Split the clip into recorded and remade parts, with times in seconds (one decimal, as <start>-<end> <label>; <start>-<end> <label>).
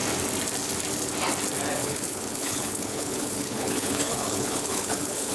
0.0-1.8 recorded; 1.8-5.3 remade